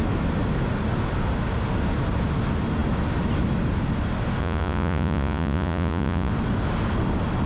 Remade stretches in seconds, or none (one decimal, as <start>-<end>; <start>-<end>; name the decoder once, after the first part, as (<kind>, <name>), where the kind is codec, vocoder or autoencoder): 4.4-6.3 (vocoder, Vocos)